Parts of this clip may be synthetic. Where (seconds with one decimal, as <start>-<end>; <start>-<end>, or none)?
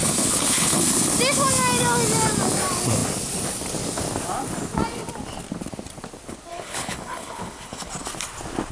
0.0-0.8; 6.5-7.9